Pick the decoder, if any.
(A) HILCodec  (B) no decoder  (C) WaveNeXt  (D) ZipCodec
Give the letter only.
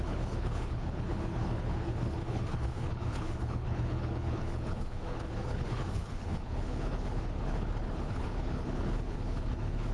A